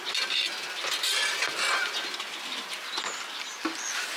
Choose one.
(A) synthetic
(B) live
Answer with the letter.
B